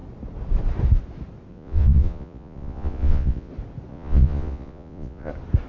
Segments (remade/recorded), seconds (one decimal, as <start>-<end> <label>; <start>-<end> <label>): 0.0-1.5 recorded; 1.5-3.5 remade; 3.5-3.9 recorded; 3.9-5.3 remade; 5.3-5.7 recorded

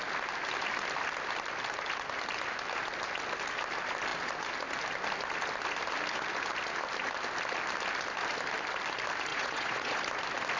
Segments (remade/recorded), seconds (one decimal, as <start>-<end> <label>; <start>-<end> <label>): 0.0-9.3 recorded; 9.3-10.0 remade; 10.0-10.6 recorded

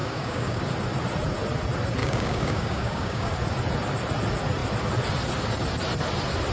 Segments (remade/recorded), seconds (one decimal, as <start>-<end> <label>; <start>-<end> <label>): 0.0-0.6 remade; 0.6-2.0 recorded; 2.0-3.3 remade; 3.3-6.5 recorded

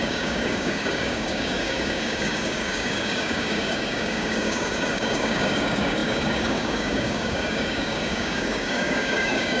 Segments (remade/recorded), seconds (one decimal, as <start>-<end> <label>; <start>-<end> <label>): 0.0-9.6 remade

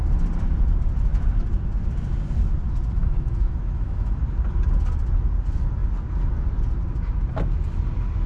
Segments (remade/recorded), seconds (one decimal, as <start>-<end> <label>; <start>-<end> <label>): 0.0-3.0 recorded; 3.0-4.2 remade; 4.2-8.3 recorded